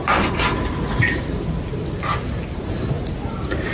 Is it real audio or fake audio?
real